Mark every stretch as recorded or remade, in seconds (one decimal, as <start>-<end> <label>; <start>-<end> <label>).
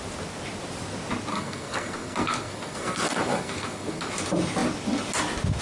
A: 0.0-1.3 recorded; 1.3-4.1 remade; 4.1-5.6 recorded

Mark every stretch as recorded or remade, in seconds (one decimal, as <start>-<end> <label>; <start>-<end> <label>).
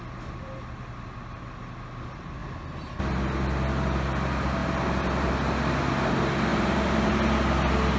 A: 0.0-6.5 recorded; 6.5-7.1 remade; 7.1-8.0 recorded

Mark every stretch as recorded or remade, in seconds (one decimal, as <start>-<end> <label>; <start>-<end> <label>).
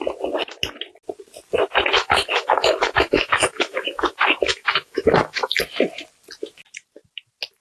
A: 0.0-2.0 recorded; 2.0-5.6 remade; 5.6-7.6 recorded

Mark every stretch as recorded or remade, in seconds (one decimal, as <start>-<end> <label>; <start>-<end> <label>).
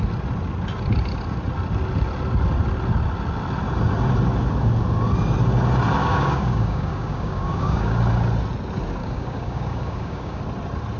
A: 0.0-6.0 recorded; 6.0-8.0 remade; 8.0-9.0 recorded; 9.0-10.4 remade; 10.4-11.0 recorded